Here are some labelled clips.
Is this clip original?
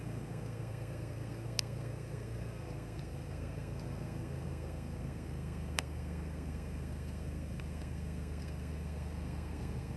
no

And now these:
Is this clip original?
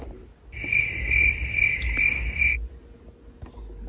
yes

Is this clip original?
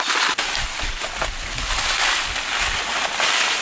yes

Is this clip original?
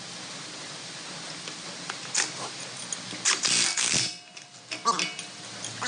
yes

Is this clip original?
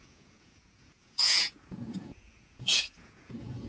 no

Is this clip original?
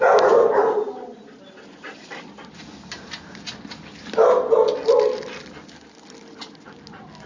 yes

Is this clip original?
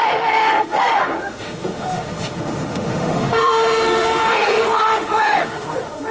no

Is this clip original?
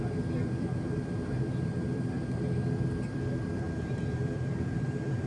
no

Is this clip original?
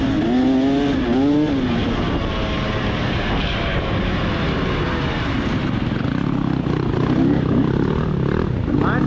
yes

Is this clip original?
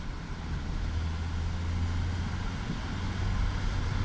yes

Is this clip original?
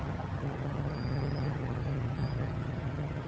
no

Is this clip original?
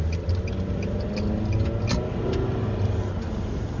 yes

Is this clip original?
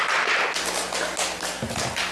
yes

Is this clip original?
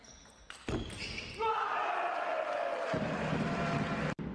yes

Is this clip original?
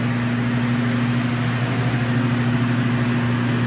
yes